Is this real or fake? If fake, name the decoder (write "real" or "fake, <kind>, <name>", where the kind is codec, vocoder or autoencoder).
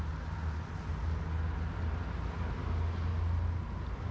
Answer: real